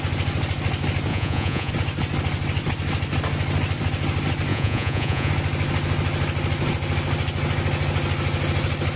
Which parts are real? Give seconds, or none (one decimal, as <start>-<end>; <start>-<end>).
0.0-1.1; 1.7-4.5; 5.3-9.0